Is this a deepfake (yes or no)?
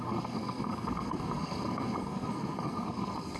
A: yes